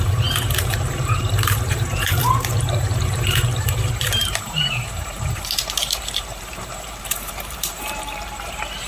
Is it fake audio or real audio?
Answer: fake